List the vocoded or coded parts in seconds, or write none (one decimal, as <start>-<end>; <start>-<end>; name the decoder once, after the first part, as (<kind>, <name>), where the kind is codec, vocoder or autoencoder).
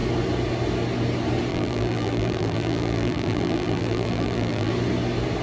1.5-4.7 (vocoder, BigVGAN v2)